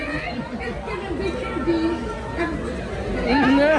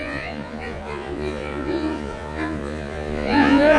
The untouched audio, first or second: first